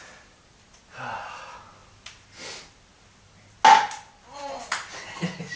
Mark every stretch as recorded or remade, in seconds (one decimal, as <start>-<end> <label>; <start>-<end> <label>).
0.0-5.6 recorded